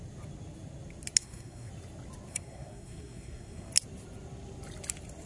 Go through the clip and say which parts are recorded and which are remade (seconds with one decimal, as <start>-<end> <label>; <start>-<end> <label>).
0.0-1.2 recorded; 1.2-1.7 remade; 1.7-2.3 recorded; 2.3-3.7 remade; 3.7-5.3 recorded